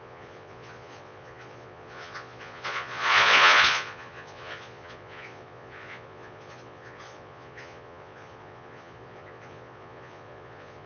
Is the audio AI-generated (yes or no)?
yes